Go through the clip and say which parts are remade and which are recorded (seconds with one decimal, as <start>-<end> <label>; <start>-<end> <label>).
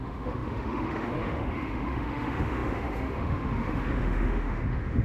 0.0-5.0 remade